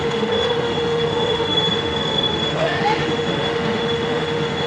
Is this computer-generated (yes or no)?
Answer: yes